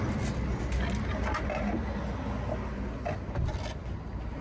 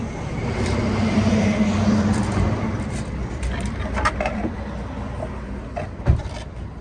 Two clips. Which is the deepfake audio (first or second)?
second